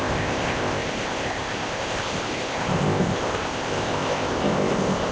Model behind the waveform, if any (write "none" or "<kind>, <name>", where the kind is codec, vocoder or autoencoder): codec, ZipCodec